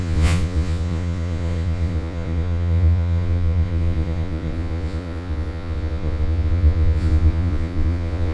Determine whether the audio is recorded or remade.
remade